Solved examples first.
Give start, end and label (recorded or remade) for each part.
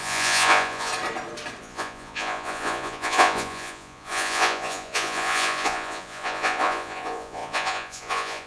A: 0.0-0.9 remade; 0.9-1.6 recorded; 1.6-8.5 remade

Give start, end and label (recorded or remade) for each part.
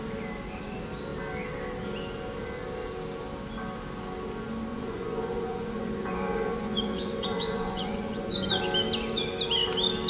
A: 0.0-4.7 recorded; 4.7-8.6 remade; 8.6-10.1 recorded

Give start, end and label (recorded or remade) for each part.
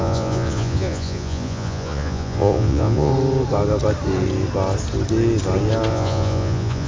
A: 0.0-3.1 remade; 3.1-5.9 recorded; 5.9-6.9 remade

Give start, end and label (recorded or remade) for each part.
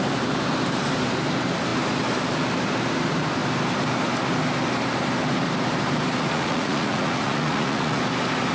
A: 0.0-6.2 recorded; 6.2-8.0 remade; 8.0-8.5 recorded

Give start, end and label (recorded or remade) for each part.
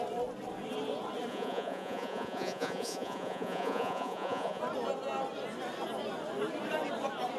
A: 0.0-1.3 recorded; 1.3-4.6 remade; 4.6-7.4 recorded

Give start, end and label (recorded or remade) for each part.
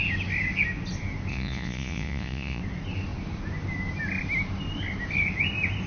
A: 0.0-1.3 recorded; 1.3-2.6 remade; 2.6-5.9 recorded